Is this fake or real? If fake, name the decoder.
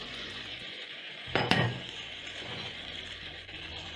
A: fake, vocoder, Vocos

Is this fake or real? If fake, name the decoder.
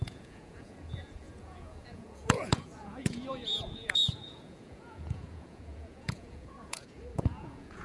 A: fake, vocoder, Vocos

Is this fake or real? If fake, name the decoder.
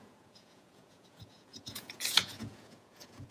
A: fake, vocoder, Vocos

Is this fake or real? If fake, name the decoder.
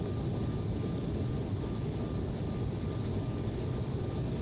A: real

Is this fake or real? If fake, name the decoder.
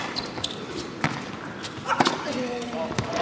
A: real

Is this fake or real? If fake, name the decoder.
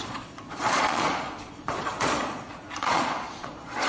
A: fake, vocoder, Vocos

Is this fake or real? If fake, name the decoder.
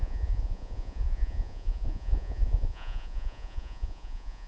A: fake, vocoder, Vocos